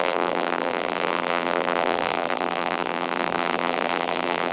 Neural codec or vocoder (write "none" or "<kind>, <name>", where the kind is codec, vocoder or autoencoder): vocoder, BigVGAN v2